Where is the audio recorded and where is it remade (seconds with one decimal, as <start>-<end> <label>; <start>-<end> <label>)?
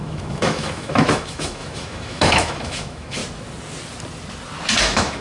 0.0-3.2 remade; 3.2-4.8 recorded; 4.8-5.2 remade